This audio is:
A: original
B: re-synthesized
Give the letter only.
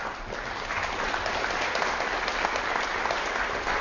A